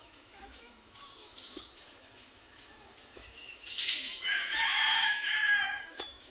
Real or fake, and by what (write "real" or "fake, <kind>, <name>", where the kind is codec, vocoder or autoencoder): fake, autoencoder, DAC-VAE